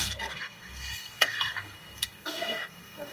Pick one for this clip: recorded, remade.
remade